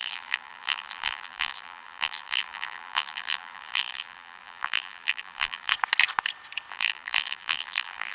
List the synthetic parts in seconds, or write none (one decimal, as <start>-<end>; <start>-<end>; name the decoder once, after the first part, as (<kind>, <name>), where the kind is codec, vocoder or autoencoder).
0.0-5.7 (vocoder, BigVGAN v2); 6.7-8.1